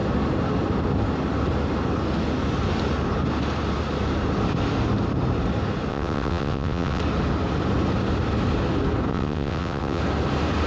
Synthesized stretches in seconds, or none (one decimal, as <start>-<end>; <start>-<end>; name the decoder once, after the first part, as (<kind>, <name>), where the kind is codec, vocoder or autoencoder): 5.9-7.0 (vocoder, WaveNeXt); 9.1-10.0